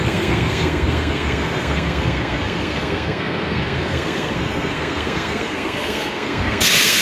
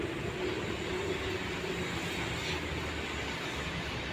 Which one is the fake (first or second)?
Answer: first